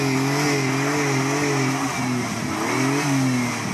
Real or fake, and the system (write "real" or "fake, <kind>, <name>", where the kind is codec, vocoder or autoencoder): real